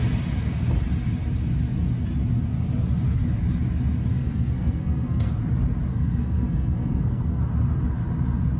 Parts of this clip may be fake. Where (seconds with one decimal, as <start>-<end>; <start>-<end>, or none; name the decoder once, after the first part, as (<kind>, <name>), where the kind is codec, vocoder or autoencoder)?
4.1-5.3 (codec, SNAC); 5.9-7.4